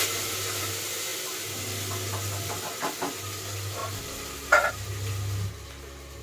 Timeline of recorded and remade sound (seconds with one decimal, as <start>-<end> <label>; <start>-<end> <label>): 0.0-6.2 recorded

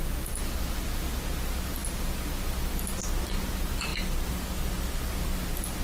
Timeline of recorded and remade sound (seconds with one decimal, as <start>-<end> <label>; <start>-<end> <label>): 0.0-5.8 recorded

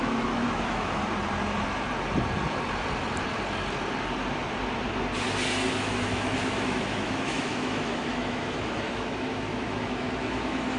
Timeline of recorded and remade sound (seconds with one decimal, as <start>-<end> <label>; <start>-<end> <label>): 0.0-1.0 remade; 1.0-5.7 recorded; 5.7-10.8 remade

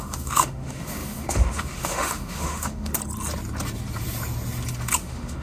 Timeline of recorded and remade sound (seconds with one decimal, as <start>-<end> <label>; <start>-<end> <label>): 0.0-3.0 remade; 3.0-5.0 recorded; 5.0-5.4 remade

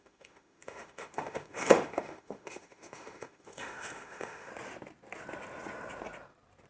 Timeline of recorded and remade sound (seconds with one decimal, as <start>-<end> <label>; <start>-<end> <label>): 0.0-4.5 remade; 4.5-6.7 recorded

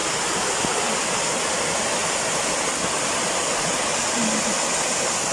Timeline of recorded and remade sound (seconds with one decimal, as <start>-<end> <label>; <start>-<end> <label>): 0.0-5.3 recorded